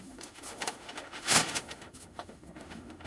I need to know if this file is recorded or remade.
remade